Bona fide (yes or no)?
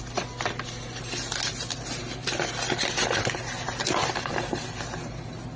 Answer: yes